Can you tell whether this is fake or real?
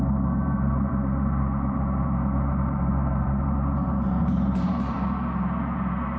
fake